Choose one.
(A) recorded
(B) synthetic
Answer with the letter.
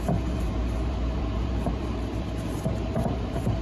B